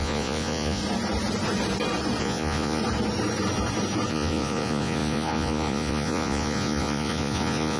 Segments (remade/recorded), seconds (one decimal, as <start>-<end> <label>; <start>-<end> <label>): 0.0-0.8 remade; 0.8-2.2 recorded; 2.2-2.8 remade; 2.8-4.1 recorded; 4.1-7.8 remade